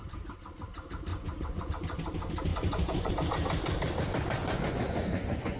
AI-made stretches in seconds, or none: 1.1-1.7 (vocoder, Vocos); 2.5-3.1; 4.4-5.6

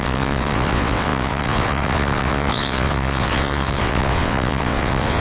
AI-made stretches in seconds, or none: 0.0-5.2 (vocoder, WaveNeXt)

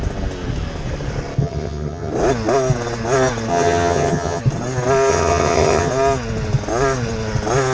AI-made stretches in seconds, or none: 1.4-2.1 (vocoder, HiFi-GAN); 3.5-4.4; 5.1-5.9

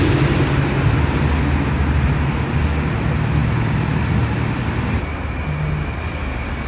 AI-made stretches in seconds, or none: none